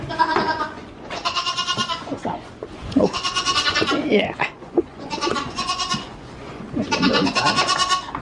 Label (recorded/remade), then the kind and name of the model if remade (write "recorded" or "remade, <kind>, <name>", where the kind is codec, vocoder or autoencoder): remade, vocoder, Vocos